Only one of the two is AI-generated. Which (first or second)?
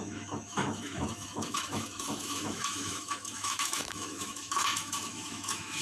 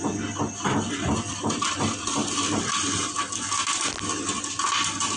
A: first